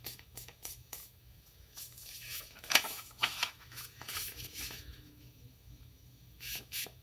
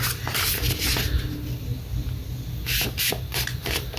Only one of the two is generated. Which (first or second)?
first